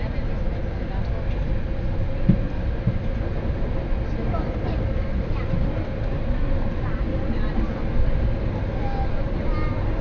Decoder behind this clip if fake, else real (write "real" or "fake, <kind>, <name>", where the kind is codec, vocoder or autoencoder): real